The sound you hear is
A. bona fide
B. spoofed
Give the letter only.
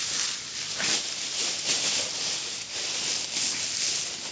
A